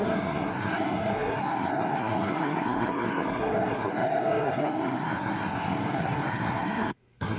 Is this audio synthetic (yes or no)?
yes